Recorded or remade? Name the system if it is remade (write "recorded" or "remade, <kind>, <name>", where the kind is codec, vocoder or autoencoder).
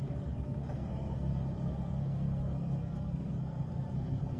remade, codec, SNAC